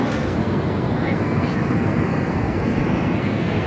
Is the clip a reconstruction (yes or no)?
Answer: yes